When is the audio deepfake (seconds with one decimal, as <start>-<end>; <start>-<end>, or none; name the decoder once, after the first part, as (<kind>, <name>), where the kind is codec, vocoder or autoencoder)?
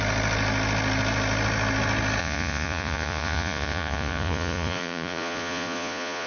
2.2-6.3 (vocoder, Vocos)